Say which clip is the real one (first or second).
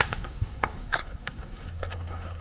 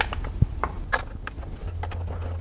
second